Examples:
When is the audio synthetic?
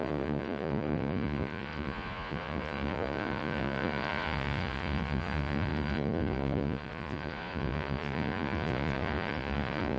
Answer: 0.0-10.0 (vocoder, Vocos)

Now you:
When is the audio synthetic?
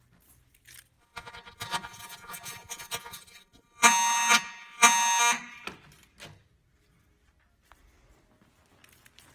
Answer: 1.0-5.2 (vocoder, Vocos)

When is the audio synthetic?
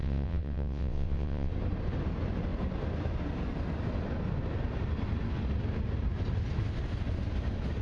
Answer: 0.0-1.5 (vocoder, WaveNeXt)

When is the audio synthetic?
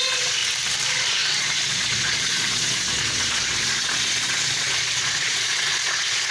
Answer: 0.0-0.4 (vocoder, Vocos); 1.4-6.3